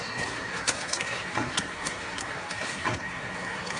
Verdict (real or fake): fake